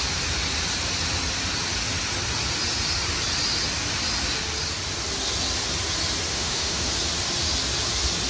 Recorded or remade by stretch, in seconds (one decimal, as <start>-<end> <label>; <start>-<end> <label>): 0.0-6.3 recorded; 6.3-6.9 remade; 6.9-8.3 recorded